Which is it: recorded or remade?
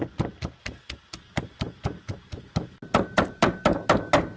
recorded